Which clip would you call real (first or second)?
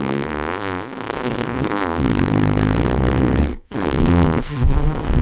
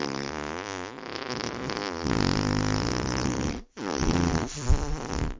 second